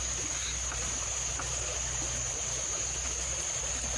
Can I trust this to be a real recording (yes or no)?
yes